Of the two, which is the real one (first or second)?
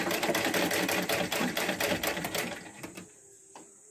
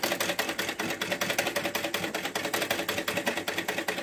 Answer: second